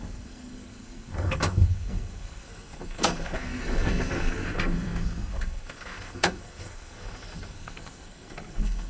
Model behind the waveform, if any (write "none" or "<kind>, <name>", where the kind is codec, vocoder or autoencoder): codec, SNAC